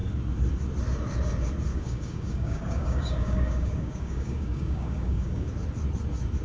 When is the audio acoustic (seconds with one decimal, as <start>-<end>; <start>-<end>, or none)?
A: 0.0-1.7; 5.5-6.4